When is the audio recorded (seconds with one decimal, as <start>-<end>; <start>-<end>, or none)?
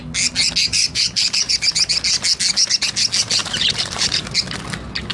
0.0-0.6; 1.5-3.4; 4.3-5.1